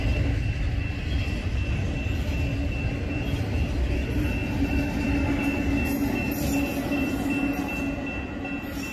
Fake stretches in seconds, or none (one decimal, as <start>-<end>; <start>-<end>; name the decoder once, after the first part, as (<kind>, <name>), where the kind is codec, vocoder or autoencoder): none